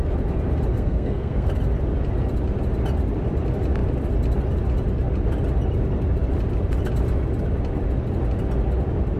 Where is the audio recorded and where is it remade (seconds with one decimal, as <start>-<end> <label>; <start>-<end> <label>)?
0.0-0.7 recorded; 0.7-1.5 remade; 1.5-9.2 recorded